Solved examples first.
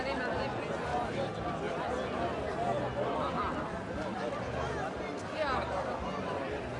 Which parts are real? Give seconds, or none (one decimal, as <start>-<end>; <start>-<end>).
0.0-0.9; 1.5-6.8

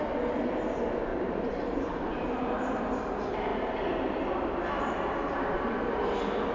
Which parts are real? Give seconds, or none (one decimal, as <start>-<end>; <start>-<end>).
0.0-1.1; 2.8-6.5

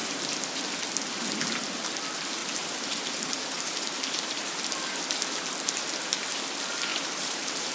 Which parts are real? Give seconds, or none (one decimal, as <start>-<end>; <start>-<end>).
0.6-2.4; 4.6-6.9

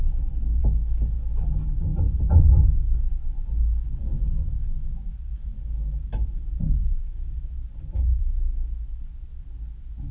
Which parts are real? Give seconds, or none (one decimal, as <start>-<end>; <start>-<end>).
0.0-4.1; 8.2-10.1

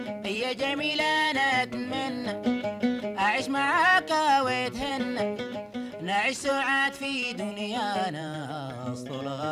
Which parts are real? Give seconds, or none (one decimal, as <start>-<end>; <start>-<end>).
3.9-4.9